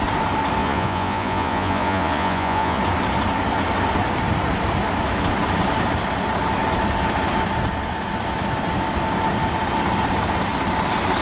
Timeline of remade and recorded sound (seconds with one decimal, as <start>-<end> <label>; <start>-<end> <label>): 0.0-0.6 recorded; 0.6-2.8 remade; 2.8-11.2 recorded